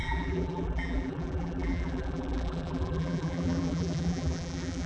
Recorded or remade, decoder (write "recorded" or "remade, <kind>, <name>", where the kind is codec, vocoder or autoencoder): remade, vocoder, BigVGAN v2